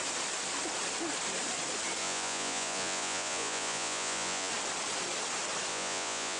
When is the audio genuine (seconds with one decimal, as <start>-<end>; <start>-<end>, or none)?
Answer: 0.0-2.0; 4.5-5.7